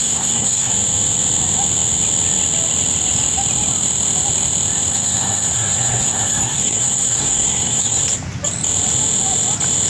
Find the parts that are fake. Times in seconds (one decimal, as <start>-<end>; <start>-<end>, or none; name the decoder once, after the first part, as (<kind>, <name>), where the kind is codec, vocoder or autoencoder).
0.0-0.7 (codec, SNAC); 4.9-8.0